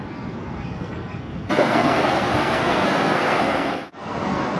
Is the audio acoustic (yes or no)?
no